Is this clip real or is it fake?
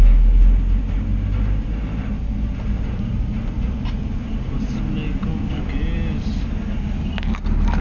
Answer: real